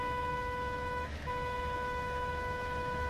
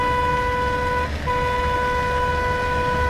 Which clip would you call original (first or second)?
second